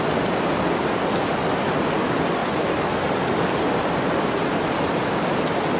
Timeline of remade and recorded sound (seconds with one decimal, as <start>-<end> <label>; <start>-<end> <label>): 0.0-5.8 recorded